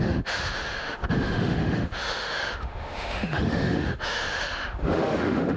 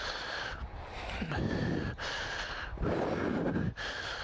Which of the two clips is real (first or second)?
second